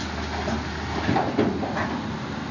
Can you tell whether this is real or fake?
real